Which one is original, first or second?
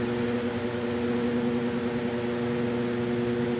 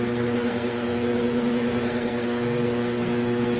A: first